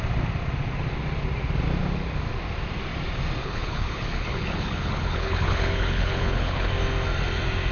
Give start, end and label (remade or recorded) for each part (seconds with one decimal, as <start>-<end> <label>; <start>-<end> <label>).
0.0-3.4 recorded; 3.4-6.7 remade; 6.7-7.7 recorded